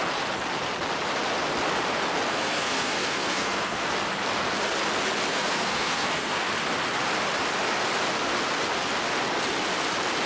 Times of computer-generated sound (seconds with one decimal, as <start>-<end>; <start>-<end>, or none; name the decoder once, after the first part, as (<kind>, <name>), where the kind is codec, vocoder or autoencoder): 2.3-3.9 (codec, SNAC); 5.3-6.5